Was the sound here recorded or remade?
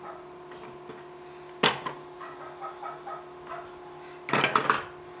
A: recorded